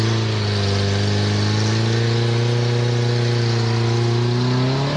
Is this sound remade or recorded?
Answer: recorded